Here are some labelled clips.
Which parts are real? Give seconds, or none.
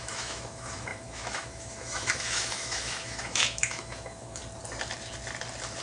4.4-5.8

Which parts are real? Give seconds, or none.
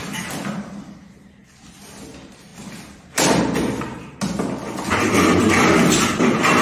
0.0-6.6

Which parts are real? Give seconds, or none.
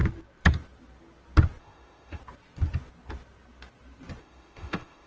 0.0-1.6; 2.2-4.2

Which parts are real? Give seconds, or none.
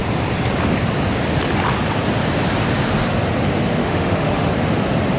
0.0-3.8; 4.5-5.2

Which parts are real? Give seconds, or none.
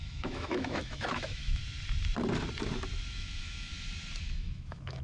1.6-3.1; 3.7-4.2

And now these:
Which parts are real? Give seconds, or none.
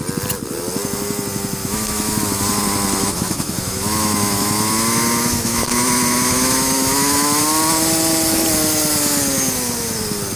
0.0-1.6; 2.2-3.0; 7.4-10.4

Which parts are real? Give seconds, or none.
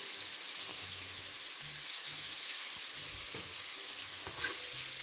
0.0-0.7; 1.5-1.9; 2.7-3.7; 4.3-5.0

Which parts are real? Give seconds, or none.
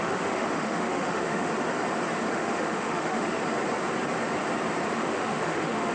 1.5-2.3; 3.4-4.9